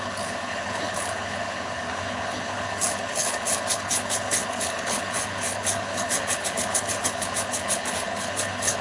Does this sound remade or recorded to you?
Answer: remade